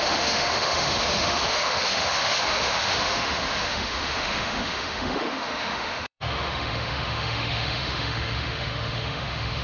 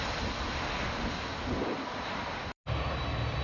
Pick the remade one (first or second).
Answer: first